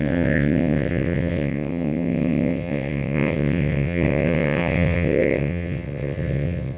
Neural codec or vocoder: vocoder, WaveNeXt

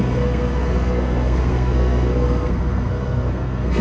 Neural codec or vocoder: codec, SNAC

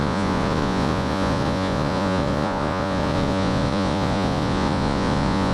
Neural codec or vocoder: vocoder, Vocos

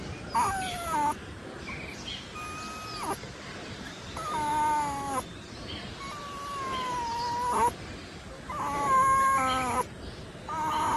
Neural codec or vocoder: none